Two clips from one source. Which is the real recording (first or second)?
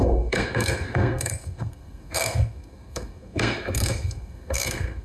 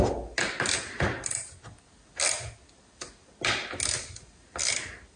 second